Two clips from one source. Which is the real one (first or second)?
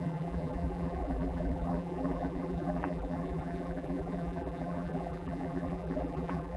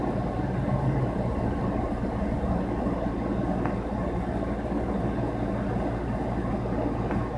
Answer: second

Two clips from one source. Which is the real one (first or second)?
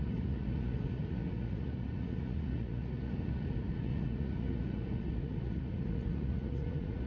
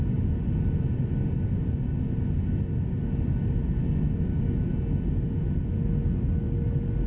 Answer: second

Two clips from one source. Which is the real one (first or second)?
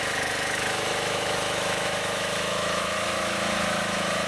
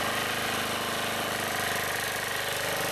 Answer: second